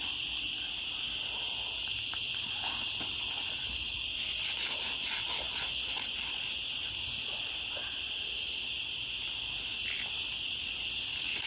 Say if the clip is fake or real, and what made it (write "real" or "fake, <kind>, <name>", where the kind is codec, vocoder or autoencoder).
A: real